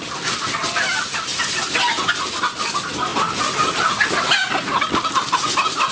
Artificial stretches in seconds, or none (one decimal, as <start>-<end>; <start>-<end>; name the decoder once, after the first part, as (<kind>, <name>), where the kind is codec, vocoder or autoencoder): none

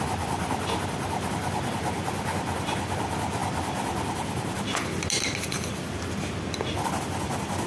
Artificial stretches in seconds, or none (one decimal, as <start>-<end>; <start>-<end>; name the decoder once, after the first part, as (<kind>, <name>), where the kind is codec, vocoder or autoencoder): none

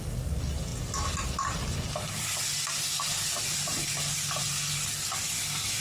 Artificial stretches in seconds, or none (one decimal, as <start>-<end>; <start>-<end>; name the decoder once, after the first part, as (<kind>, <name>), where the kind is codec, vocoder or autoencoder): none

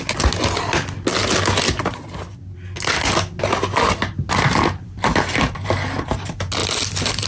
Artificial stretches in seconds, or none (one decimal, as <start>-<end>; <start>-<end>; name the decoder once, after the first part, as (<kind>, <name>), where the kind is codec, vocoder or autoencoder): none

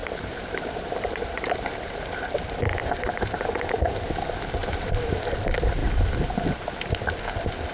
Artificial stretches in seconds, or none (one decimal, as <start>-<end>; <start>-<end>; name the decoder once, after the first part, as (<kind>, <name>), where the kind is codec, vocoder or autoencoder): 0.0-2.5 (vocoder, BigVGAN v2); 4.6-5.2

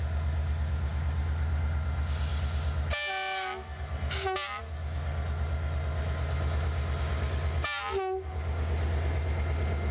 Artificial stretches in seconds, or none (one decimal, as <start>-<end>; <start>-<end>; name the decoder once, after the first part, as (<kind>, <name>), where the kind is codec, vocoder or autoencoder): none